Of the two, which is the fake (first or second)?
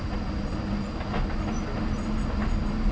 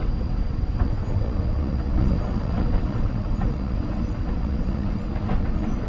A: second